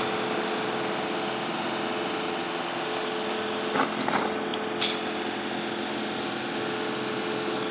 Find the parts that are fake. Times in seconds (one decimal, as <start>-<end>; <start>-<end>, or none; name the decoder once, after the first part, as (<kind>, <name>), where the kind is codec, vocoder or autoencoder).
none